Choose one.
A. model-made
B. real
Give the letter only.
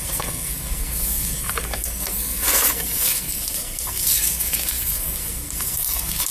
A